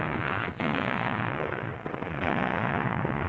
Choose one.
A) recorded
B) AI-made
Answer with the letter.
B